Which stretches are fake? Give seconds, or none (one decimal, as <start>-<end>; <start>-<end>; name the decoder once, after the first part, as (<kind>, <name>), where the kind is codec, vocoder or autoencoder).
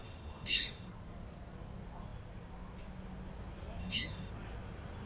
0.0-0.9 (autoencoder, DAC-VAE); 3.8-4.3